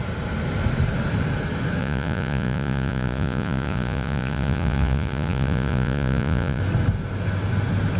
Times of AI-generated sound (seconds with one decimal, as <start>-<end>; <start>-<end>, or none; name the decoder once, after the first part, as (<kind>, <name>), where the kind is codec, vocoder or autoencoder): 1.8-6.6 (vocoder, Vocos)